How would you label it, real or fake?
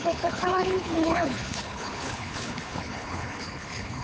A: fake